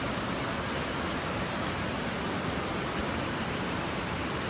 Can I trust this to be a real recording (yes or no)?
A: yes